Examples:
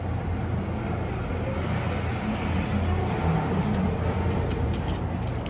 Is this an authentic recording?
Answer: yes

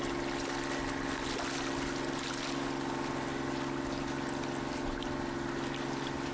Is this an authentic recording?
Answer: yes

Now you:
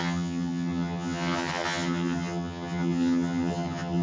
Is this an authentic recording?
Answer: no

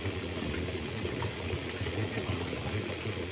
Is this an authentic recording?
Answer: no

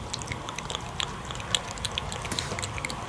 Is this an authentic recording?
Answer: yes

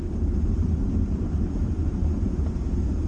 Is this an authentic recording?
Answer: no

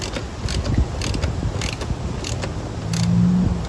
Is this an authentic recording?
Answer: yes